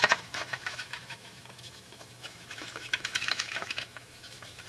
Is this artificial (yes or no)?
yes